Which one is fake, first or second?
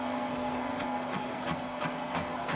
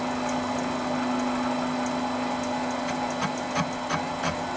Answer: first